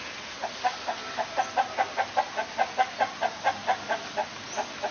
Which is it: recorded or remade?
recorded